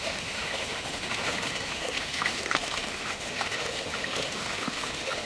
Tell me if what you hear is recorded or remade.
remade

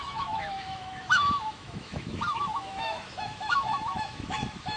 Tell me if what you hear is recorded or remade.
remade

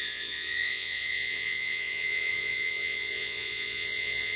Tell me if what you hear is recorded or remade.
remade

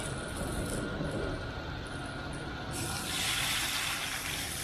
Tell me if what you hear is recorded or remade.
recorded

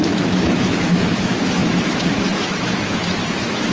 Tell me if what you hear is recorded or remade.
remade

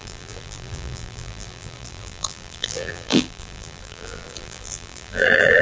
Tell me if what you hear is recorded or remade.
remade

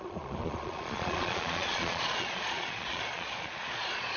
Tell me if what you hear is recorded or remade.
remade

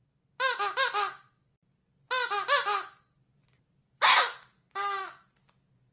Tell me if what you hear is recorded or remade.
recorded